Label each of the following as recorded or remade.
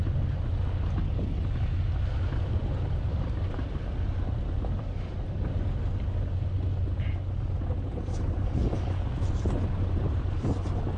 recorded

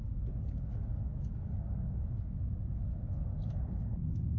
recorded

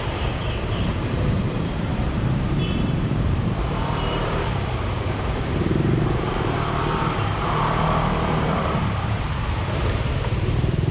remade